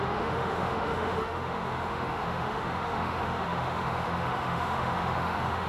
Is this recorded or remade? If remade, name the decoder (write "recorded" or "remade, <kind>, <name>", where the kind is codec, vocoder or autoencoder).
remade, autoencoder, DAC-VAE